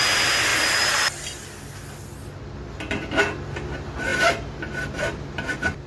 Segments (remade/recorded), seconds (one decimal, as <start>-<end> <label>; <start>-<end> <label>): 0.0-2.2 recorded; 2.2-3.2 remade; 3.2-4.1 recorded; 4.1-5.5 remade; 5.5-5.9 recorded